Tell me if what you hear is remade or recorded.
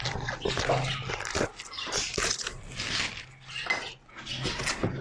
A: recorded